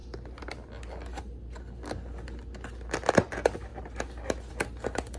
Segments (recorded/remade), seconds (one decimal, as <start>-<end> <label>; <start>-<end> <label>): 0.0-5.2 recorded